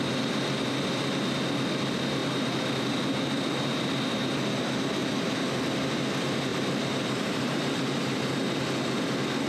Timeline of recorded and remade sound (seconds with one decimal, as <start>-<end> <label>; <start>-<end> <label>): 0.0-2.2 recorded; 2.2-2.9 remade; 2.9-5.0 recorded; 5.0-5.5 remade; 5.5-6.5 recorded; 6.5-8.3 remade; 8.3-9.5 recorded